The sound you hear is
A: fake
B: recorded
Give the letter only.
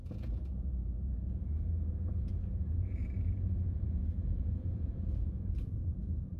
A